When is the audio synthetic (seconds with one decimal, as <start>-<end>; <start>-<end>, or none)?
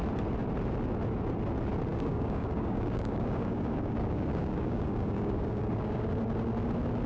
1.9-6.2